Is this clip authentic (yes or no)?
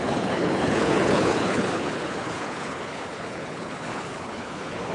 no